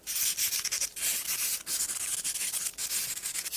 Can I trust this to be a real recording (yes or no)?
yes